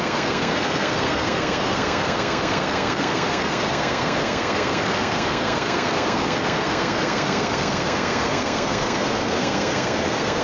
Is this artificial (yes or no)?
yes